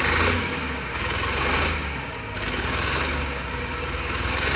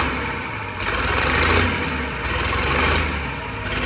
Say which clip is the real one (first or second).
second